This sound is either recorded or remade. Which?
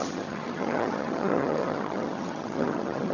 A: remade